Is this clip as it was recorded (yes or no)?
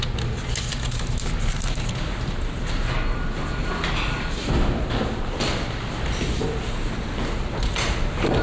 yes